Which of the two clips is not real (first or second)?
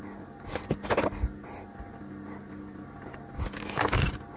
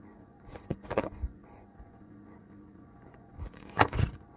second